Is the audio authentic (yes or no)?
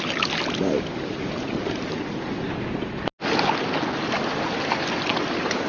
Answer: yes